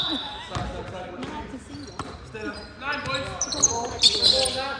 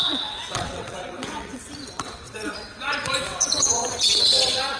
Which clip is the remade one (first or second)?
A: second